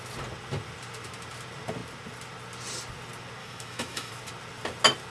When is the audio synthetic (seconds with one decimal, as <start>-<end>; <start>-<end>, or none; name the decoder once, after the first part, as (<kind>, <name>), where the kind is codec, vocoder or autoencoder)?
3.4-4.1 (autoencoder, DAC-VAE)